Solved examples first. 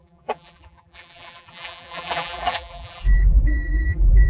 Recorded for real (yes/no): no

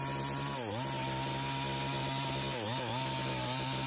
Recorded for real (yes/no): yes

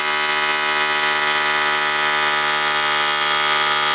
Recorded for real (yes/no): yes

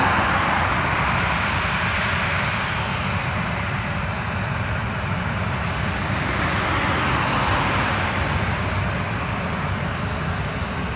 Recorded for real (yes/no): yes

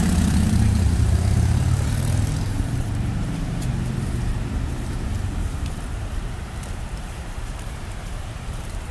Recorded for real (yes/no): no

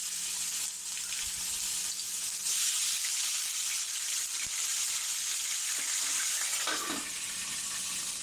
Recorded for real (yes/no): yes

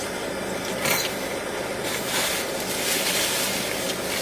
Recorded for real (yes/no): yes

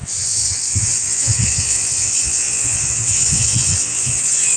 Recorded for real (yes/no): no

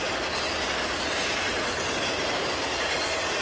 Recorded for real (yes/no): yes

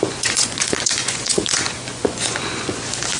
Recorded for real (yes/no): no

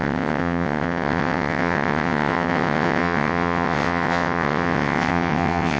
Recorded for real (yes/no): no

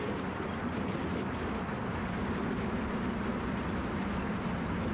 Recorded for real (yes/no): yes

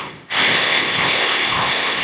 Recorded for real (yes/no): no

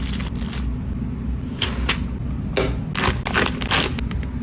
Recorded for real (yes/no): yes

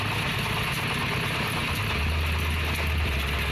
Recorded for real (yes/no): yes